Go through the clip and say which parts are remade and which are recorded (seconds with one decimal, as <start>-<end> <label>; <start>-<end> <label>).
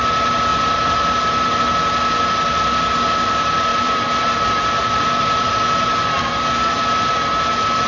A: 0.0-0.5 recorded; 0.5-1.6 remade; 1.6-3.7 recorded; 3.7-5.5 remade; 5.5-7.9 recorded